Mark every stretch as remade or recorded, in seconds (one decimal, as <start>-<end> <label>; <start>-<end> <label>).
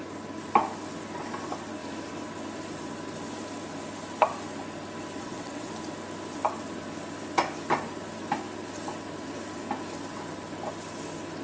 0.0-5.2 recorded; 5.2-5.7 remade; 5.7-11.4 recorded